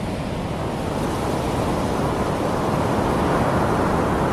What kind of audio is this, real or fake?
real